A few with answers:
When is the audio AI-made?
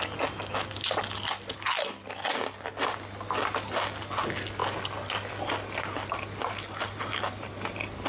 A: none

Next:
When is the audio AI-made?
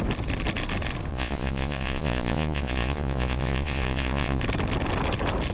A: 1.1-4.4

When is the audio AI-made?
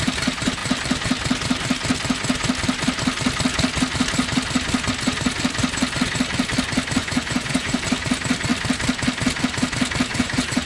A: 7.0-7.8; 10.1-10.7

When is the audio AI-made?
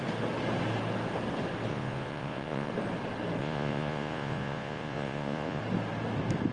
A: 1.7-2.7; 3.4-5.6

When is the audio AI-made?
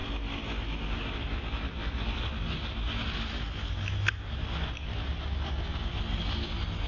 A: none